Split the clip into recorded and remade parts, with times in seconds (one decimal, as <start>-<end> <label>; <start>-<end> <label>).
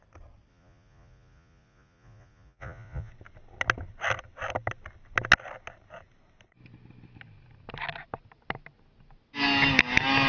0.0-0.5 recorded; 0.5-3.1 remade; 3.1-10.3 recorded